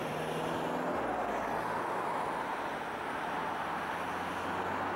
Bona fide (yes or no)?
yes